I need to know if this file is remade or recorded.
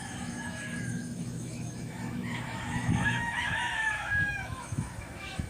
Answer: remade